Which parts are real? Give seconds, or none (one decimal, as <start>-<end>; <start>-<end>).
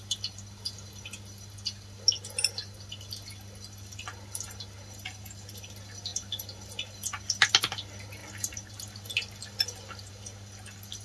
0.0-11.0